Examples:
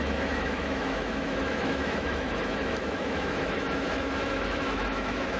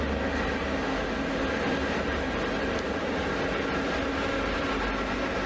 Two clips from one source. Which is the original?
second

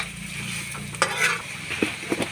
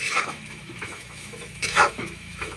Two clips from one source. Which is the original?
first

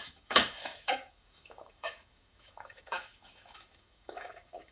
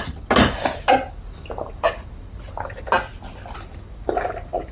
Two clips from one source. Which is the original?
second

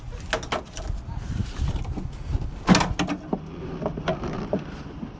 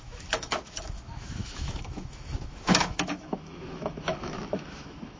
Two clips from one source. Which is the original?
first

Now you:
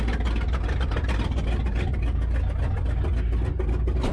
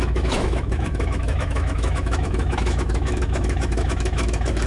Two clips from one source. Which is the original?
first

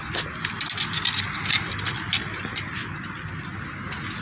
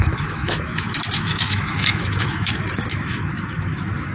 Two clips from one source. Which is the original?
first